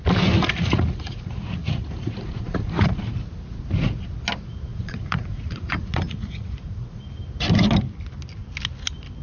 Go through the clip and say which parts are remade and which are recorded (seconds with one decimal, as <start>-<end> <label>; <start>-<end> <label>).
0.0-0.4 recorded; 0.4-3.0 remade; 3.0-4.7 recorded; 4.7-7.0 remade; 7.0-9.2 recorded